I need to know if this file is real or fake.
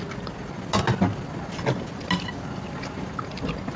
real